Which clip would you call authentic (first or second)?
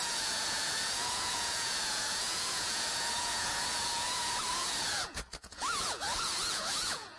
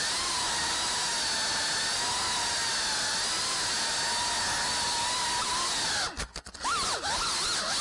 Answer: second